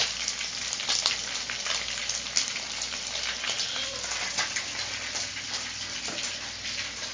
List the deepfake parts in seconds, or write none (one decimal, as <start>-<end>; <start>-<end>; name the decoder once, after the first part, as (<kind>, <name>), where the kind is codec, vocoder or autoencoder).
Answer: none